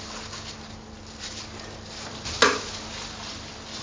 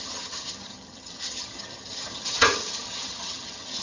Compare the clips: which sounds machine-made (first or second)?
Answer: second